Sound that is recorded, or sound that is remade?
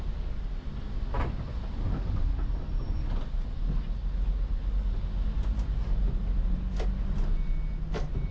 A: recorded